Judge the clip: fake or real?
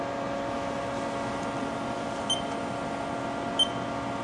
real